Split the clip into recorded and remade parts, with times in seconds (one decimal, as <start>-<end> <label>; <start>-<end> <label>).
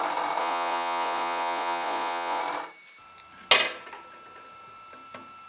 0.0-0.4 recorded; 0.4-2.4 remade; 2.4-5.5 recorded